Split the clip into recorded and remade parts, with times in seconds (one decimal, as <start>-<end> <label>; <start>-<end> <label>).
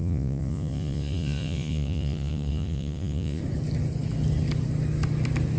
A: 0.0-3.4 remade; 3.4-5.6 recorded